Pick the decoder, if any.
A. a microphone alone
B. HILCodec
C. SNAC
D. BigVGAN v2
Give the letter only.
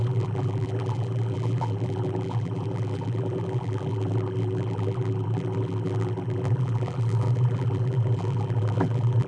D